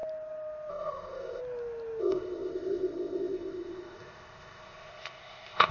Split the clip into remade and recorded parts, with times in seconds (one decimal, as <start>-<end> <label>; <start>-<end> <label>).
0.0-0.7 recorded; 0.7-1.4 remade; 1.4-2.0 recorded; 2.0-5.7 remade

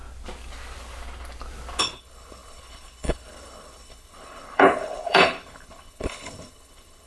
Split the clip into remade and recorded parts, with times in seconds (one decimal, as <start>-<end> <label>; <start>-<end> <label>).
0.0-1.8 recorded; 1.8-7.1 remade